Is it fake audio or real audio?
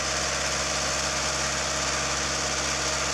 real